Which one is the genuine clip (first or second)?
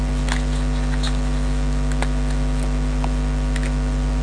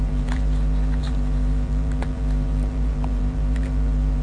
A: first